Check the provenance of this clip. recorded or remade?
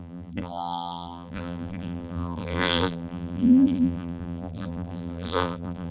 remade